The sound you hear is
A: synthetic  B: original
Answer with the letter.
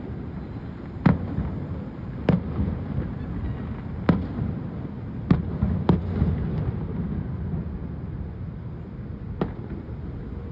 B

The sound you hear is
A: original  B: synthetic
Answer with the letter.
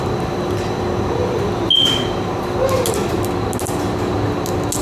A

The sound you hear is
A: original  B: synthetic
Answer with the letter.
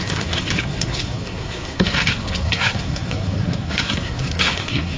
B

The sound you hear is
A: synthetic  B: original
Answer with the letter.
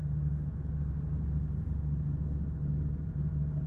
B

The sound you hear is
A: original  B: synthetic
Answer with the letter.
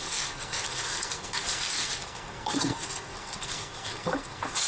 B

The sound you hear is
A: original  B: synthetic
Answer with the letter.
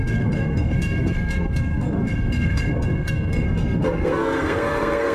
B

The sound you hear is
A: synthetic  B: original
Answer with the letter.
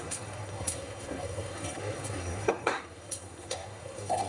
A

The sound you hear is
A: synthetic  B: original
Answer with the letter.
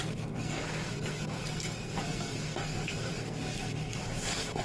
A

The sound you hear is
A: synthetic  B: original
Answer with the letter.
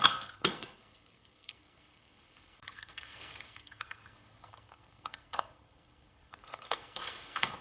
A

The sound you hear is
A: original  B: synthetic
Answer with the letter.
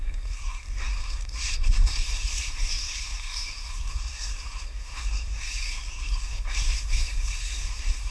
B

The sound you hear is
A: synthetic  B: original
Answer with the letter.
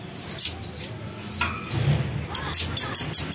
B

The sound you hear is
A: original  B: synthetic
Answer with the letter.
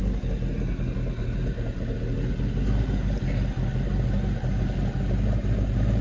A